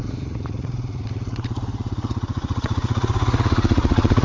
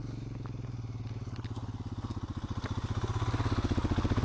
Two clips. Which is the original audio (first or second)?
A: second